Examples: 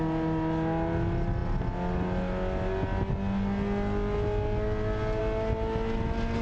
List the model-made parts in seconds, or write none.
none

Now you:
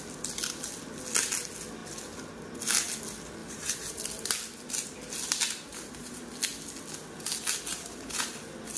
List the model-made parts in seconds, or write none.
3.4-4.0 (vocoder, BigVGAN v2); 5.7-6.3; 7.7-8.3

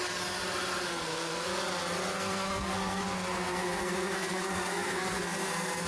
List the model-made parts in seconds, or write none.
0.9-1.5 (codec, SNAC); 2.1-5.9

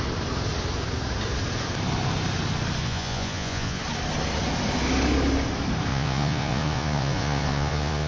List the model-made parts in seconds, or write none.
2.8-3.8 (vocoder, Vocos); 5.9-8.1

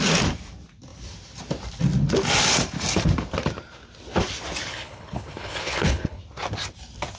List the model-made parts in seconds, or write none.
4.7-6.2 (codec, HILCodec)